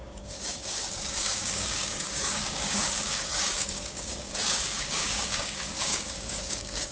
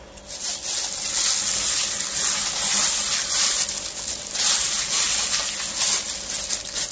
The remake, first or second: first